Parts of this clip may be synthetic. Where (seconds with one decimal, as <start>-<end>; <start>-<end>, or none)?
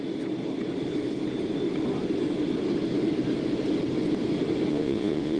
4.7-5.4